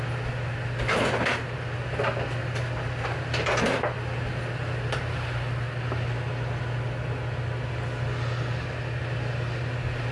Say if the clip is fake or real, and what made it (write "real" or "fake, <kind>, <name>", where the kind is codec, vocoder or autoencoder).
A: real